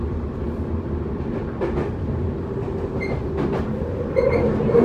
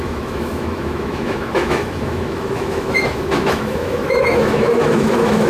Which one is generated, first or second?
second